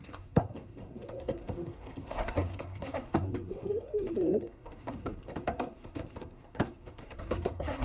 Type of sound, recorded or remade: remade